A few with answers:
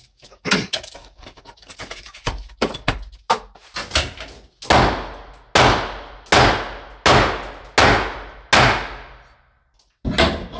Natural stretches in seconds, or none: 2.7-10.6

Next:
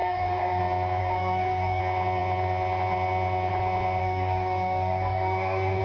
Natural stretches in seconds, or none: 0.6-1.0; 1.8-4.0

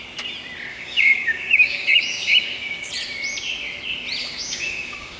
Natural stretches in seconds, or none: 0.0-0.7; 2.9-4.2

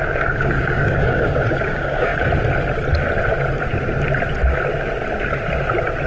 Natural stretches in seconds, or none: 2.1-6.1

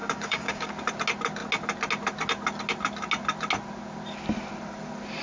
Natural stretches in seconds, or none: 0.7-5.2

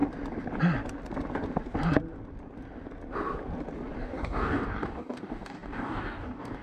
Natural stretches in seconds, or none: 0.0-4.0

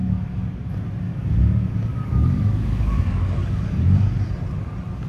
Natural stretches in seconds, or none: 0.7-1.1; 4.2-5.1

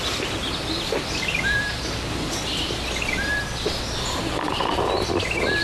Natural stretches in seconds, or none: 0.0-5.6